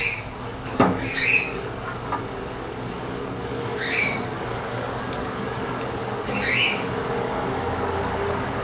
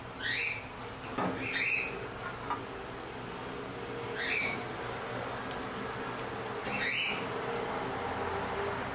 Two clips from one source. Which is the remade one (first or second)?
first